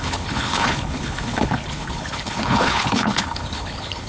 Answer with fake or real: fake